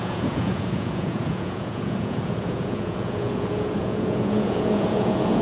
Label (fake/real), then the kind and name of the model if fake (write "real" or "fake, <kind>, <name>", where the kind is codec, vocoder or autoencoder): fake, vocoder, Vocos